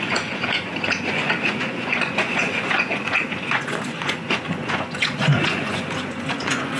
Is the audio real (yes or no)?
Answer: no